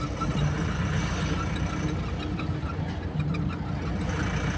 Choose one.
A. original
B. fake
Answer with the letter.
A